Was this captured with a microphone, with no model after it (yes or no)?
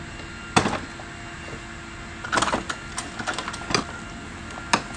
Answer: yes